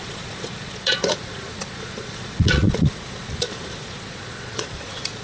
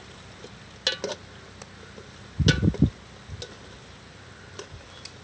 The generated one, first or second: first